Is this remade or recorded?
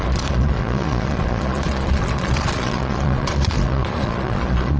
remade